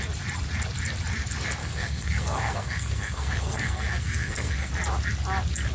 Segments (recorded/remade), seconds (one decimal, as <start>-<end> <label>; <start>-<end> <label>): 0.0-1.6 recorded; 1.6-4.7 remade; 4.7-5.7 recorded